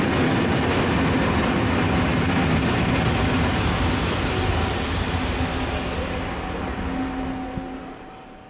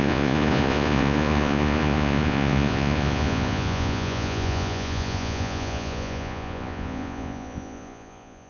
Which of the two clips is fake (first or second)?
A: second